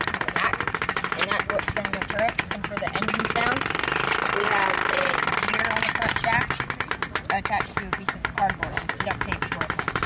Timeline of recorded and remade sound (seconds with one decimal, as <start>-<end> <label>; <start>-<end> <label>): 0.0-10.1 recorded